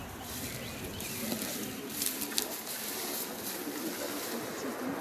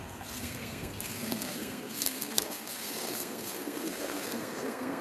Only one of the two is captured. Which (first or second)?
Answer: first